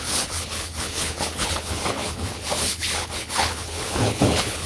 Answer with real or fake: fake